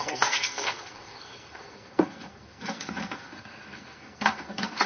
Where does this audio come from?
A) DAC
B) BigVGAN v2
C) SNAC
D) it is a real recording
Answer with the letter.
C